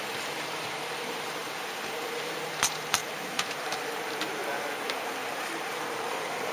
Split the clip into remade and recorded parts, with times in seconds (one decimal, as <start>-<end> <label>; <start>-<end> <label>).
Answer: 0.0-4.4 remade; 4.4-5.3 recorded; 5.3-6.5 remade